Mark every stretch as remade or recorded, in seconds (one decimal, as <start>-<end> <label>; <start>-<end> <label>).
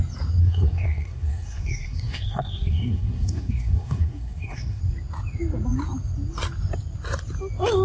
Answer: 0.0-0.4 recorded; 0.4-4.8 remade; 4.8-7.8 recorded